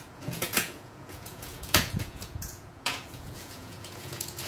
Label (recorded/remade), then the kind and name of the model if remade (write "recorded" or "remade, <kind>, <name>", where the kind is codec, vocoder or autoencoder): remade, vocoder, Vocos